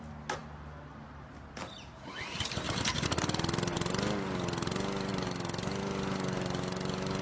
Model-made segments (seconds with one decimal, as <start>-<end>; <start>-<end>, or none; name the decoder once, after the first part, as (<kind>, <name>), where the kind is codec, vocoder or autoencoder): none